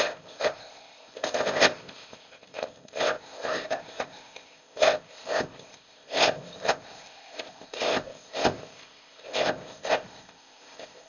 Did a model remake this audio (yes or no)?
yes